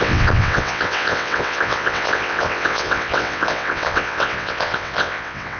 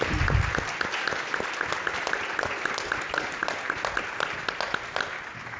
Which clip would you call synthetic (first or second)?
first